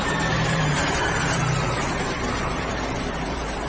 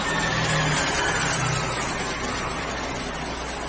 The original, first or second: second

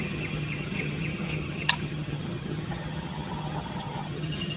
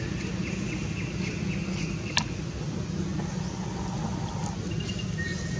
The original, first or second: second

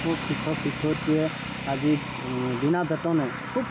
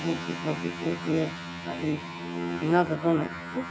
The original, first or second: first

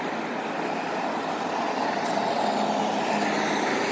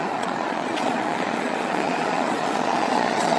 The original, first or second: first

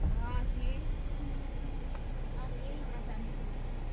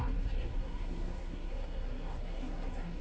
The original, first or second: first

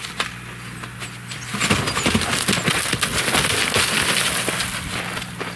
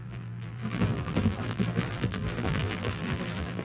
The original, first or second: first